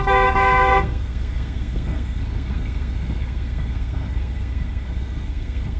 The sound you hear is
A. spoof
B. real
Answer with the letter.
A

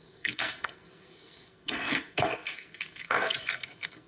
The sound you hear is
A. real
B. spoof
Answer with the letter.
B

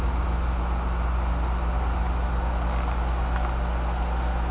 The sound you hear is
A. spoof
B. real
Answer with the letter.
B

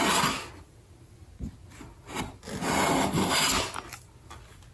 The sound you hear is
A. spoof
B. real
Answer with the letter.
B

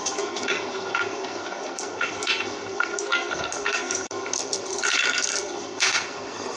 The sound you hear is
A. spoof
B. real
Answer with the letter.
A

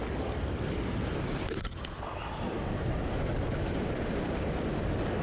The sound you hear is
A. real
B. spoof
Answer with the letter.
A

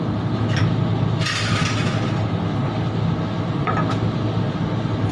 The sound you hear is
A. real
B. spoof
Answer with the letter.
A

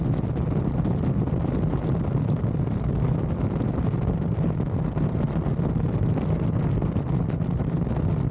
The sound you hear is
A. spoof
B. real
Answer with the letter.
B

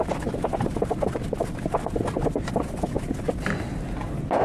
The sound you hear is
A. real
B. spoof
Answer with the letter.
A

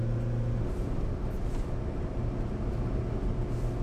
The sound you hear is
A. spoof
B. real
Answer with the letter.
B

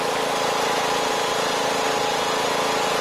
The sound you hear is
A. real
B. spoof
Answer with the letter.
A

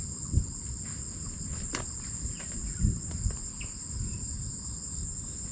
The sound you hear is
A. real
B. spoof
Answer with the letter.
A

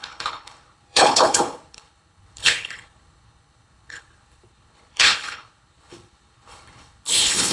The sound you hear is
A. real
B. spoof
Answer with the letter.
B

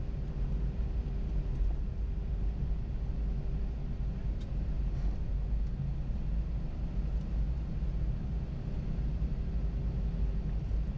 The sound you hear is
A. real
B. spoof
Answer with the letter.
A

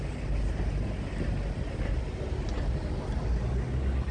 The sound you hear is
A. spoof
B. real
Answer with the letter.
B